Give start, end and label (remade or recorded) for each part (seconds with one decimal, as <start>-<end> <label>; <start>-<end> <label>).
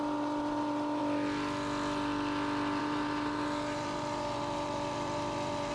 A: 0.0-1.0 remade; 1.0-2.8 recorded; 2.8-5.7 remade